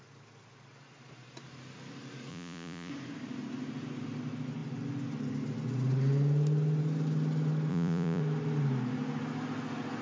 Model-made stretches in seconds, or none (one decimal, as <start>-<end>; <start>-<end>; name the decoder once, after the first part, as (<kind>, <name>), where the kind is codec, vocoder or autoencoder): 2.3-2.9 (vocoder, Vocos); 7.7-8.2